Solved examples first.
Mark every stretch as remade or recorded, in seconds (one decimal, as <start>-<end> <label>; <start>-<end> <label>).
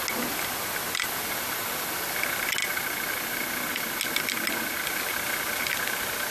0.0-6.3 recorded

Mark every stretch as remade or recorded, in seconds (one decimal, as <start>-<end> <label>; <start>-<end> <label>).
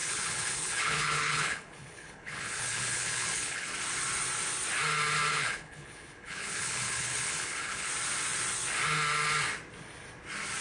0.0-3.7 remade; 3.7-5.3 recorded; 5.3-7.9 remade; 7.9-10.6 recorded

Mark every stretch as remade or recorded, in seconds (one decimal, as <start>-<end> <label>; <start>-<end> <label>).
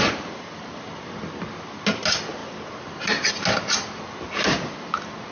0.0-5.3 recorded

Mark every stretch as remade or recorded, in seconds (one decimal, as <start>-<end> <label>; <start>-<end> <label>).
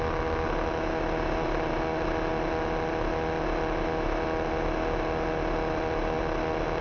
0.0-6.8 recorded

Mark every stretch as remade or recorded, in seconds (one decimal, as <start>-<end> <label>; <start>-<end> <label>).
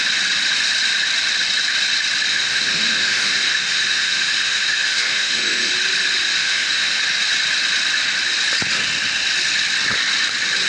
0.0-2.3 recorded; 2.3-5.7 remade; 5.7-6.4 recorded; 6.4-7.0 remade; 7.0-10.7 recorded